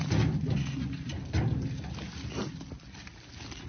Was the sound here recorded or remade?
recorded